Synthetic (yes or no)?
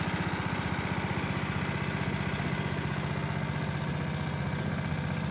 no